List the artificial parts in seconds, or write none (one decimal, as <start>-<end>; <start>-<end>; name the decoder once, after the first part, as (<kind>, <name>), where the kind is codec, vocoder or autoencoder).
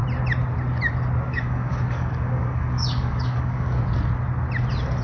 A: 1.3-3.8 (codec, DAC)